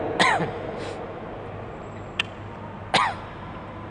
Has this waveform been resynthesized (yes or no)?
no